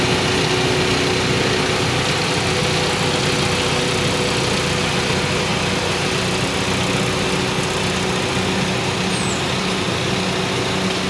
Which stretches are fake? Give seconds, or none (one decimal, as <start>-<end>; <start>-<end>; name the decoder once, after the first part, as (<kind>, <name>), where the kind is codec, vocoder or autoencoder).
none